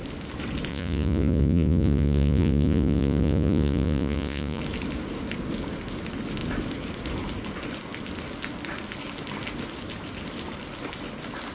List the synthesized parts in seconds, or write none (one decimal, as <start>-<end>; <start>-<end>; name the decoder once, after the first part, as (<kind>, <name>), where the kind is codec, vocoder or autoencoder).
0.7-4.6 (vocoder, Vocos)